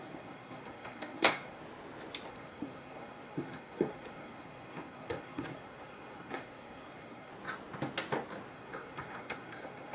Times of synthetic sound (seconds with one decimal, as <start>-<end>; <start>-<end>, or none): 0.0-1.6; 2.3-7.3; 8.5-9.9